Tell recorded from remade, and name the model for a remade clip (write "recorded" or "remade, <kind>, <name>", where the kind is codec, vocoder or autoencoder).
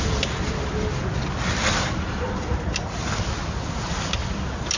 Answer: recorded